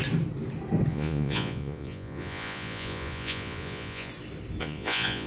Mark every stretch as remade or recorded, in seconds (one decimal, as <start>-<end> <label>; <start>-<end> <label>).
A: 0.0-0.9 recorded; 0.9-4.1 remade; 4.1-4.6 recorded; 4.6-5.3 remade